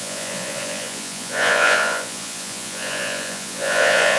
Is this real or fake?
fake